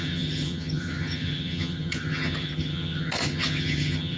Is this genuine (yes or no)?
no